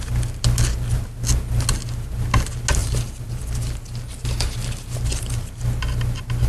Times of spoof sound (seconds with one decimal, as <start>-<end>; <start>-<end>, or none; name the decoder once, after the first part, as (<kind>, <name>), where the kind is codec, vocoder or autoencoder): 2.8-3.4 (vocoder, BigVGAN v2)